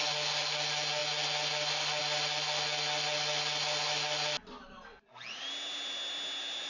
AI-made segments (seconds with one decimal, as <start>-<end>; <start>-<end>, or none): none